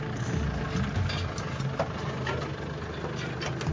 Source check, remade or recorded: recorded